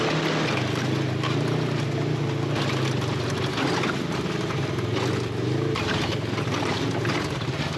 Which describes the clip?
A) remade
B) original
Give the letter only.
B